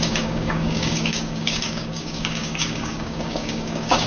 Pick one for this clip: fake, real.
fake